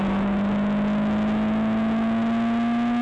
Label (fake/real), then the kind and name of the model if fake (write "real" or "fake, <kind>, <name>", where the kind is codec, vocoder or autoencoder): real